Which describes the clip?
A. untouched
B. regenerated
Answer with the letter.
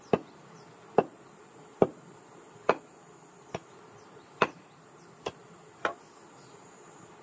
A